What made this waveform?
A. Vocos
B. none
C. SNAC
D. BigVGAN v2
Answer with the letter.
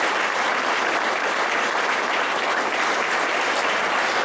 B